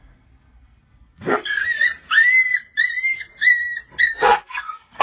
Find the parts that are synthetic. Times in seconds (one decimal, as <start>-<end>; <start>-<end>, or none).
0.0-1.6; 4.0-5.0